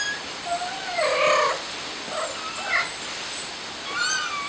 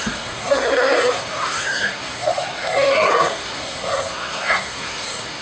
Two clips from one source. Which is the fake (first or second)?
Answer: second